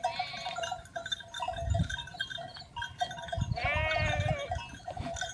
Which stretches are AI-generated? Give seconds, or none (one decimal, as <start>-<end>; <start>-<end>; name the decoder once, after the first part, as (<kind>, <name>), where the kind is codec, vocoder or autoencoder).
none

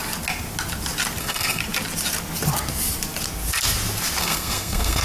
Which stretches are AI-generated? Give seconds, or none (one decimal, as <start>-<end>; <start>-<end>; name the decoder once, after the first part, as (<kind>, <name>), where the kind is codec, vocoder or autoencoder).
1.2-1.6 (codec, SNAC); 4.2-5.0

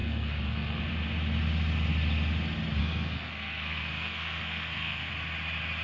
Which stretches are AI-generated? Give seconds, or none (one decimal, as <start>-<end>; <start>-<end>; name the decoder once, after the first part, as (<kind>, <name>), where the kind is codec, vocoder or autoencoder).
0.0-0.8 (codec, SNAC); 2.8-5.1

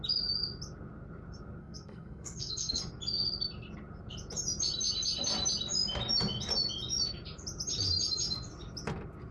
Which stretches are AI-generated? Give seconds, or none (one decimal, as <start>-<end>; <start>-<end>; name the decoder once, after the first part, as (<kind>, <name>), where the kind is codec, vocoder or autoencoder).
1.6-2.8 (codec, SNAC)

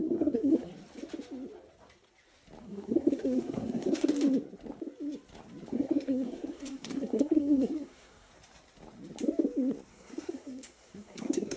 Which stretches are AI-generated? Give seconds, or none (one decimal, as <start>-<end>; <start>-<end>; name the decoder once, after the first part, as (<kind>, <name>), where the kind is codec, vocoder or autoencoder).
0.0-0.7 (codec, SNAC); 2.6-4.1; 5.7-8.3; 9.9-11.6

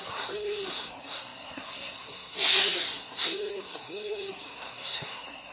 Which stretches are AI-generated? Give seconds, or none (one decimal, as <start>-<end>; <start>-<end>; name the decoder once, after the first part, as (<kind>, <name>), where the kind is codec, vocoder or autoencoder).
0.0-5.5 (codec, SNAC)

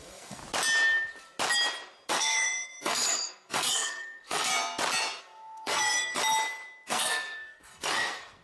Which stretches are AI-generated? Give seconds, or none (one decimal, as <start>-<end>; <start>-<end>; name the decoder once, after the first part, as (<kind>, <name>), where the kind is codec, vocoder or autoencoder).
0.0-0.4 (codec, SNAC); 2.1-4.5; 5.2-6.2; 6.9-8.4